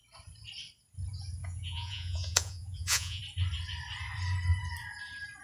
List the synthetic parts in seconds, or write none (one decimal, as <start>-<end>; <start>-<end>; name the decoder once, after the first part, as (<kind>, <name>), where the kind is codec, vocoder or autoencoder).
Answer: 1.4-3.2 (vocoder, Vocos)